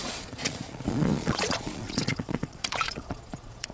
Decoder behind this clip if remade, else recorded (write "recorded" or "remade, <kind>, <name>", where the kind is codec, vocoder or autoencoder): remade, vocoder, Vocos